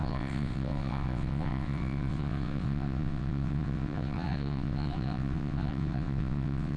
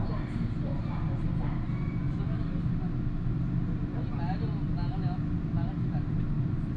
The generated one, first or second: first